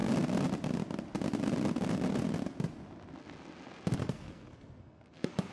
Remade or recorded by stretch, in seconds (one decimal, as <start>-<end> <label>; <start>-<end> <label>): 0.0-4.0 recorded; 4.0-5.5 remade